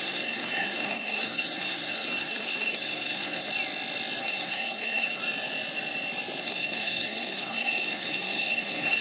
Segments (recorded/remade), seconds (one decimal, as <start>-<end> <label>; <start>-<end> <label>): 0.0-3.5 remade; 3.5-4.2 recorded; 4.2-5.2 remade; 5.2-6.4 recorded; 6.4-9.0 remade

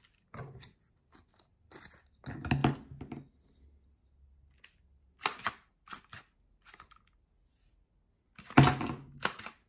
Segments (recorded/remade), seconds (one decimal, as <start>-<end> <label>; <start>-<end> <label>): 0.0-9.7 recorded